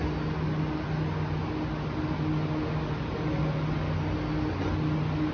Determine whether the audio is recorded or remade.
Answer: recorded